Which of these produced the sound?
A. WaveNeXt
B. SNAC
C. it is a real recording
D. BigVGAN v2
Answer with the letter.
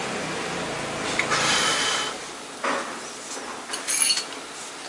C